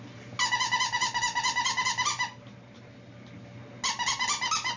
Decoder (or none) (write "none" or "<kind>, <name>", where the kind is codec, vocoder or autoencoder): none